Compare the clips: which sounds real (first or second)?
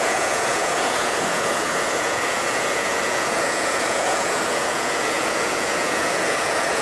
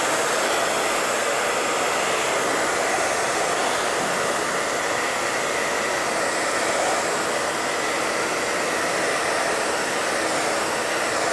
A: second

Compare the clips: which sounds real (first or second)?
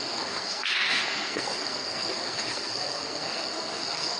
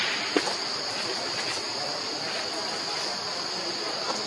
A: second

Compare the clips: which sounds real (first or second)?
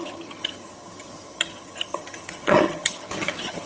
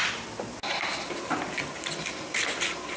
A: second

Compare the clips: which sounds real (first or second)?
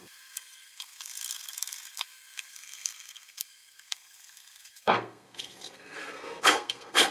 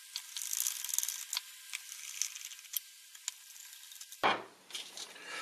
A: second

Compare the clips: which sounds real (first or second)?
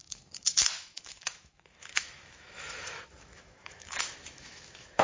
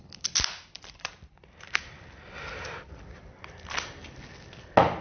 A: second